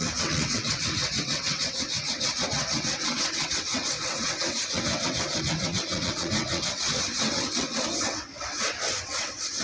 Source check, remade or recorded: remade